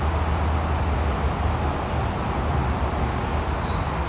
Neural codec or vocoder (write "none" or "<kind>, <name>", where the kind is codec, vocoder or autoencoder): none